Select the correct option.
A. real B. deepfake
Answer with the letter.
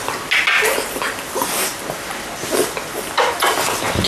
A